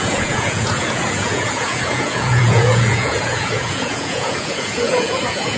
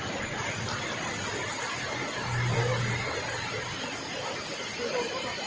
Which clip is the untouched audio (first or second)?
second